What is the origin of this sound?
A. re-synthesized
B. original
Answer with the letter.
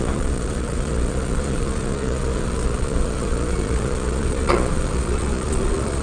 A